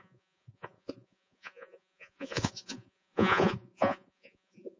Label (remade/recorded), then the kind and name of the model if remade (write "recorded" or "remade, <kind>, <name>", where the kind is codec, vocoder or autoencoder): remade, vocoder, Vocos